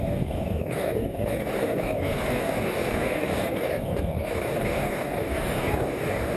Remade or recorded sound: remade